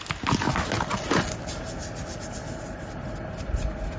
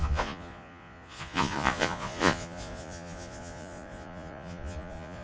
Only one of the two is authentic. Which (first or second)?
first